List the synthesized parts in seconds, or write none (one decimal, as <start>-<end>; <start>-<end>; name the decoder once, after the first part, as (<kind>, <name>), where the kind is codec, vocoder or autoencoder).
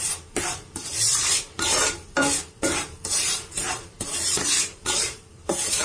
0.0-5.8 (vocoder, BigVGAN v2)